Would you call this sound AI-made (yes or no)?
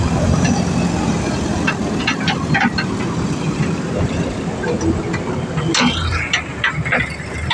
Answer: no